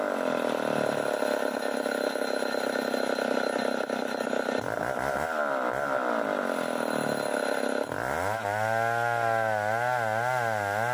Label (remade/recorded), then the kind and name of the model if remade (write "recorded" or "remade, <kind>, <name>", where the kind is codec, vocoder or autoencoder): recorded